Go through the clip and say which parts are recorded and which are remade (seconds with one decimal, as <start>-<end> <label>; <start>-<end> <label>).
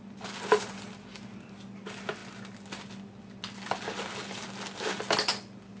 0.0-5.8 recorded